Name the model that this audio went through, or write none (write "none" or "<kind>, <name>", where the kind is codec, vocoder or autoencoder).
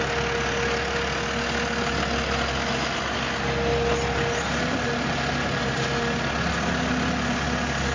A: none